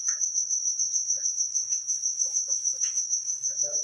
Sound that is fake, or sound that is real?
fake